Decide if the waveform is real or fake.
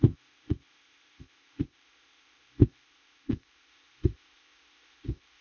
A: fake